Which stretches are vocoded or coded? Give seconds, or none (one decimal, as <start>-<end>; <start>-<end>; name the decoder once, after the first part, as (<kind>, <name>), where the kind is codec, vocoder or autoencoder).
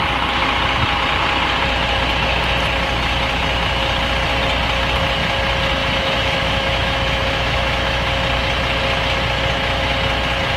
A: 5.8-8.1 (autoencoder, DAC-VAE)